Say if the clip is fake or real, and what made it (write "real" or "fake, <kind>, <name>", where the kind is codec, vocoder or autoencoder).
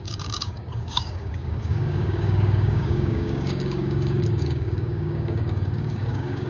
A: fake, codec, DAC